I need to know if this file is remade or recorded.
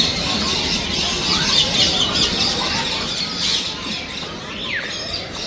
recorded